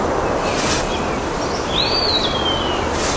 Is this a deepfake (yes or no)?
no